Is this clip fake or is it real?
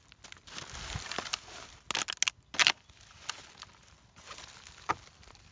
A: real